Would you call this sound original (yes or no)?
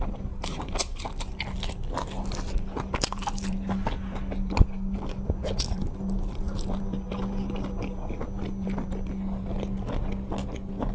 yes